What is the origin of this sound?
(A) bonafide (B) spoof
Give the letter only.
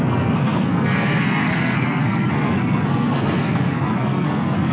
B